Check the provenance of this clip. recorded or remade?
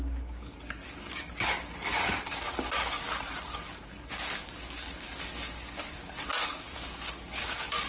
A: remade